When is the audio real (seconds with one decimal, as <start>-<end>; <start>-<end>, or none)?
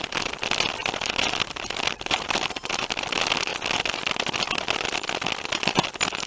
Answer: 0.0-6.3